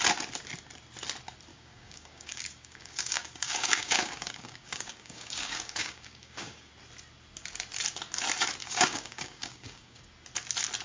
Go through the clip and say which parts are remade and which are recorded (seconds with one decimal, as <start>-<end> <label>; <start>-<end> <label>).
0.0-1.5 recorded; 1.5-6.7 remade; 6.7-8.6 recorded; 8.6-10.0 remade; 10.0-10.8 recorded